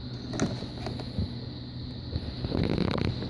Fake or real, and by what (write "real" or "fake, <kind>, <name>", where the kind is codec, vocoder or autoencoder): real